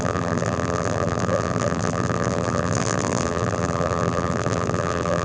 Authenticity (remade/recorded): remade